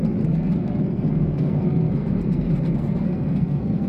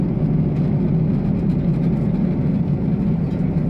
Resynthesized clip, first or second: first